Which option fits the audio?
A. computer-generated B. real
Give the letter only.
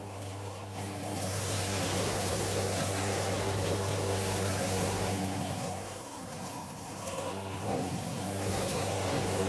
A